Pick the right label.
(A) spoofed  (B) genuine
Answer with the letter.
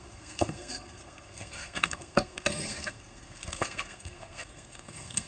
A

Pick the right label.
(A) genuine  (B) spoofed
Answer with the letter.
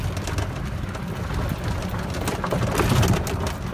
A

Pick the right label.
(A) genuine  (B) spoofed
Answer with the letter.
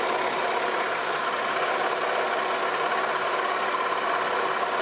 A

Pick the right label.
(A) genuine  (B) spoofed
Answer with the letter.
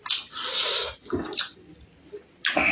A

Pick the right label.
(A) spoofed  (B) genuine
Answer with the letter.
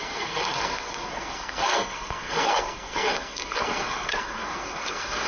A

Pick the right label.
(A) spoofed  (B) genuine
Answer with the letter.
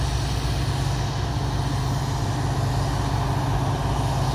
B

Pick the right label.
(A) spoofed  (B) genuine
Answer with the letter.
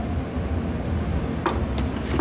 B